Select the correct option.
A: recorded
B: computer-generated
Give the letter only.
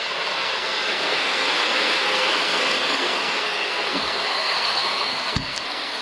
B